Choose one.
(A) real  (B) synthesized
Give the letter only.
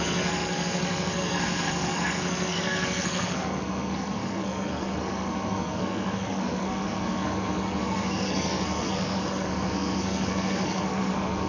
B